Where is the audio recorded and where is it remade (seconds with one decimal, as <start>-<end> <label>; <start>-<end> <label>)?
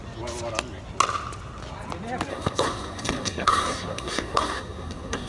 0.0-2.3 recorded; 2.3-5.3 remade